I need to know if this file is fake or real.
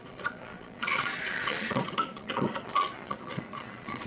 fake